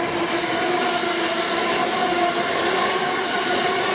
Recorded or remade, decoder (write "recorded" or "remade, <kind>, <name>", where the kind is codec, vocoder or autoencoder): recorded